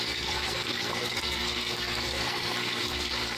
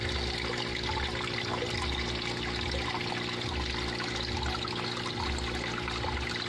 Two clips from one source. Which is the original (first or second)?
second